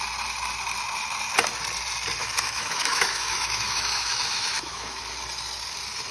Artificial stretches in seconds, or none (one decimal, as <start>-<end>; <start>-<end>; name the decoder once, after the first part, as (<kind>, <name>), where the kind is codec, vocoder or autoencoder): 2.2-5.0 (autoencoder, DAC-VAE)